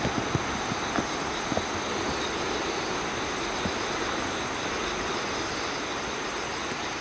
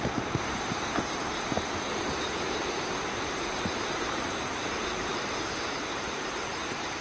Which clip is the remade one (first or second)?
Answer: second